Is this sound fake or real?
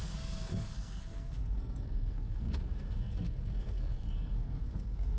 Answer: fake